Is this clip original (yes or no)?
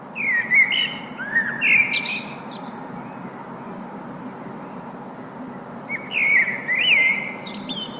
yes